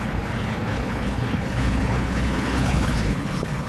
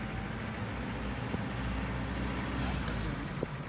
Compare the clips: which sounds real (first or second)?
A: second